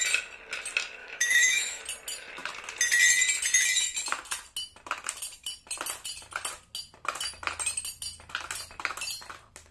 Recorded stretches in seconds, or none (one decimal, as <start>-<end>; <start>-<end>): 0.0-1.0; 1.8-9.7